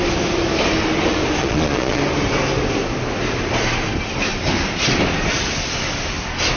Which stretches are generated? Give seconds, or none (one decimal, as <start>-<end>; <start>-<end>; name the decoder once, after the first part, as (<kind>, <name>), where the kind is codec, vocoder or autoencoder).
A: 1.4-2.0 (vocoder, Vocos)